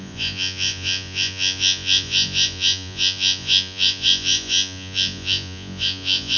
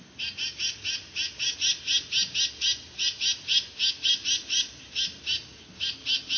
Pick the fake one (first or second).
first